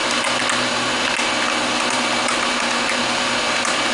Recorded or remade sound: recorded